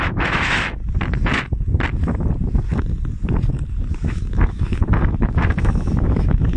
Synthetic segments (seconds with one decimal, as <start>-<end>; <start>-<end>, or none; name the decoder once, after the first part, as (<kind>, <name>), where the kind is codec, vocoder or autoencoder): 0.0-0.8 (autoencoder, DAC-VAE); 3.9-6.6